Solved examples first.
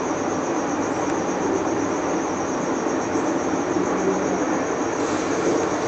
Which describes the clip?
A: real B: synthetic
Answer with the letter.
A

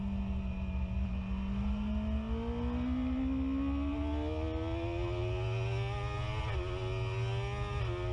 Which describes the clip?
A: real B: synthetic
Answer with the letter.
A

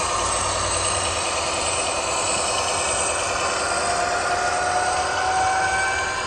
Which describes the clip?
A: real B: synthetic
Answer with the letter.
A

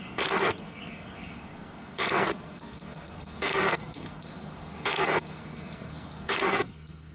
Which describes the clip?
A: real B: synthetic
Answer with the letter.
B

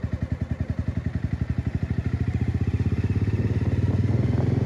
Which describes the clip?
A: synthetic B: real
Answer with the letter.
B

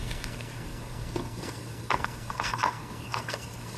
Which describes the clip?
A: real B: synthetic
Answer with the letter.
B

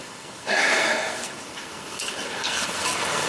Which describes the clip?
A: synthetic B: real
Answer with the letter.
A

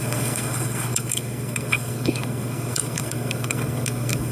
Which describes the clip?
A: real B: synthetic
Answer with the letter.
B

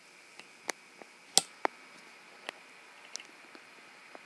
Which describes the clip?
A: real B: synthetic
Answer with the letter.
A